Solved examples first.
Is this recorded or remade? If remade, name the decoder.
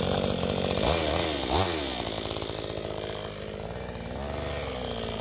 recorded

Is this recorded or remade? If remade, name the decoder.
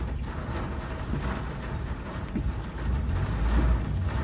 recorded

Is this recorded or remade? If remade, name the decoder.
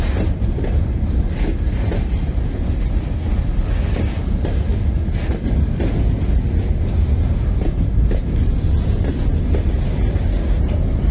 recorded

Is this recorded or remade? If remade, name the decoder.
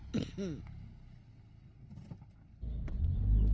recorded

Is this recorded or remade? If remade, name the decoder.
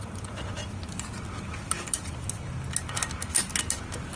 recorded